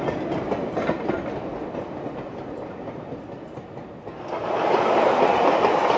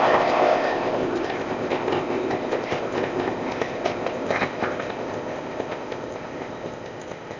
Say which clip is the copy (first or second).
second